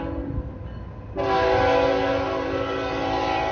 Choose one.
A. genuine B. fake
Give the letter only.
A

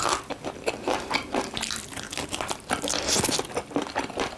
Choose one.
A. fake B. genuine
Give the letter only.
B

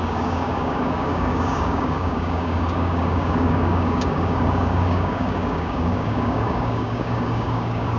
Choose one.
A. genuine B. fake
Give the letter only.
B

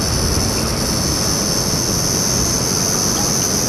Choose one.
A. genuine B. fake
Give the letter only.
A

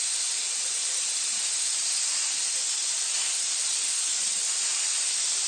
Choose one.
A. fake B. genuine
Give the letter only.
B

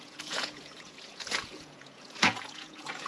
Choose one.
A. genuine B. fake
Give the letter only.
B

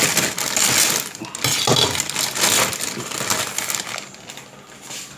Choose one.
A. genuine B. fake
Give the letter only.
A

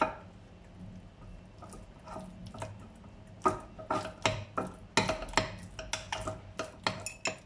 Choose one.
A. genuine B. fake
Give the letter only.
A